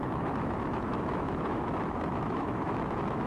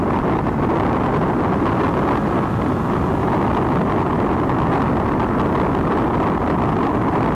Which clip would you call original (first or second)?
second